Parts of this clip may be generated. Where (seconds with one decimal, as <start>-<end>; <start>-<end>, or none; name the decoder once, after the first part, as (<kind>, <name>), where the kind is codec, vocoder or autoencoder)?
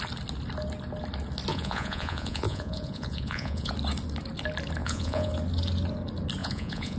1.5-3.7 (vocoder, Vocos); 4.8-5.3; 6.4-7.0